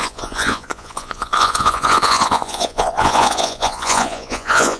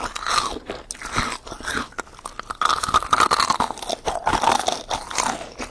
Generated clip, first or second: first